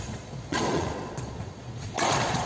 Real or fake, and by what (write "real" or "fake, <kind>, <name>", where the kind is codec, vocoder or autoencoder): fake, vocoder, Vocos